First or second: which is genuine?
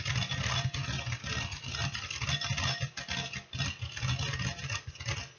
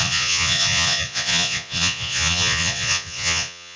first